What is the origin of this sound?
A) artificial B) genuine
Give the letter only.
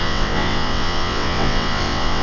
A